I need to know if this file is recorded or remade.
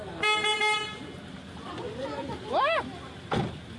recorded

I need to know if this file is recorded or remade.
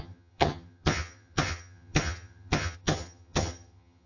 remade